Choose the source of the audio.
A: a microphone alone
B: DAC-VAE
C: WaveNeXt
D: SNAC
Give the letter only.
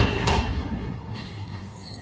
D